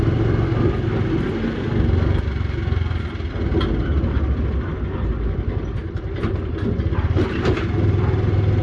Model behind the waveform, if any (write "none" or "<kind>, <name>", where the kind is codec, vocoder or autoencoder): none